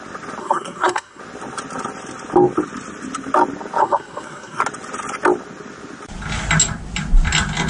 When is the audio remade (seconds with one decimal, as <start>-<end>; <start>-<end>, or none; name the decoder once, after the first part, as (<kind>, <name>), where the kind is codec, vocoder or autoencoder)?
0.4-1.2 (codec, SNAC); 3.8-4.6

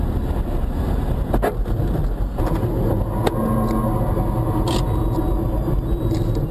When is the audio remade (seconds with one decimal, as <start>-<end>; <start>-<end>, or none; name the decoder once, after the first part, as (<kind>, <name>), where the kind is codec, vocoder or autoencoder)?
none

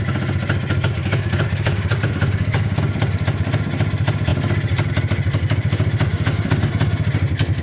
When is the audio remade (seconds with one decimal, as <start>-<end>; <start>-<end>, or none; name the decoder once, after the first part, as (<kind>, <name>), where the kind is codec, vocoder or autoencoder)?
1.0-2.8 (codec, DAC); 6.1-6.7

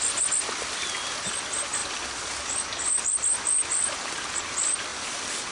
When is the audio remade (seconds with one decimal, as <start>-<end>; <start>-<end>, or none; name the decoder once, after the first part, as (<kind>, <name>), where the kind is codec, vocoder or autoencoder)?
none